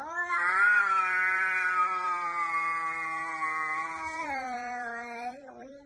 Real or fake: fake